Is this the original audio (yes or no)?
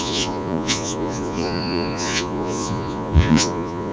no